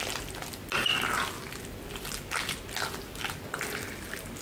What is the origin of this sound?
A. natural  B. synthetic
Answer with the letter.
A